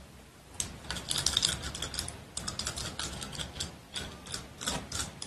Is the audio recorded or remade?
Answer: recorded